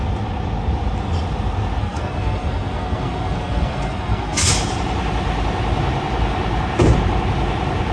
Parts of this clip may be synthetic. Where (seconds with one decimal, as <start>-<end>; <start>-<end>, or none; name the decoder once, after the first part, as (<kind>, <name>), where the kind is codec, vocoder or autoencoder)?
1.8-4.5 (codec, SNAC)